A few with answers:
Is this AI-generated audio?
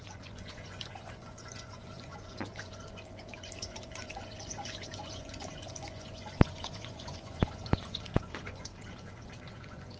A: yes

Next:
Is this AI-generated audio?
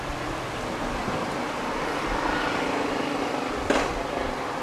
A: no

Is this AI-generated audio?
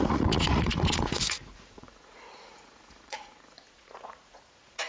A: yes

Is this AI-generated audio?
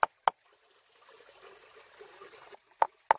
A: no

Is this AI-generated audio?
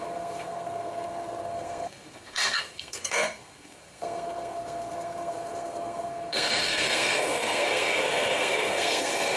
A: yes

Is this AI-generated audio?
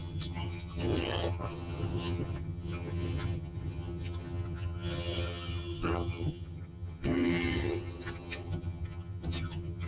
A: yes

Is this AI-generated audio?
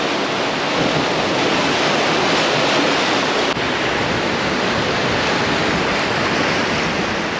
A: no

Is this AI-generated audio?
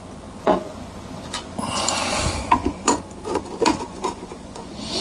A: yes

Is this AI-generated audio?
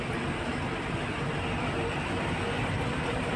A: no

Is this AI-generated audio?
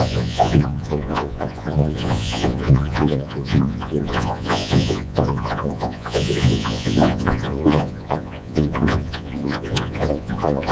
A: yes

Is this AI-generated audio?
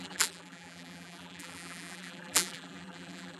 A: yes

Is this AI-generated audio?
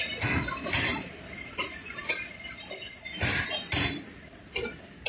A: no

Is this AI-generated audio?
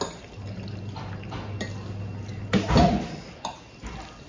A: no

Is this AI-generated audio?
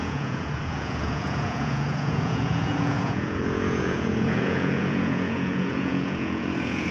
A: yes